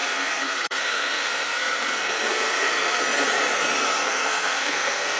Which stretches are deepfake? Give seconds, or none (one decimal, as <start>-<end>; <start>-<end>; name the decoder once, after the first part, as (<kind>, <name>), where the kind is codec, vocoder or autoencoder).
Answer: 0.0-3.0 (codec, SNAC); 4.0-5.2